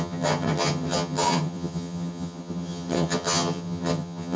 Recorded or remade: remade